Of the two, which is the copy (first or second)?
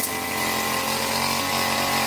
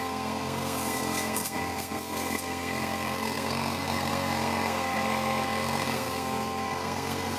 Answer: second